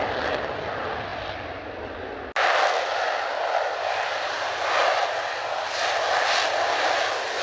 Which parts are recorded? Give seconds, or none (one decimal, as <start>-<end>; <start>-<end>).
0.0-7.4